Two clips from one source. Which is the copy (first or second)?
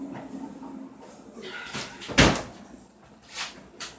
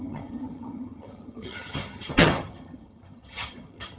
second